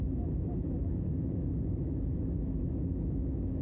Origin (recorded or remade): remade